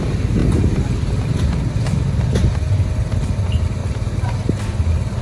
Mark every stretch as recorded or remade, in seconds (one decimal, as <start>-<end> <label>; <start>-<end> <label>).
0.0-5.2 recorded